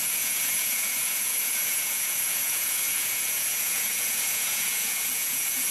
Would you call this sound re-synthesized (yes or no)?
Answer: yes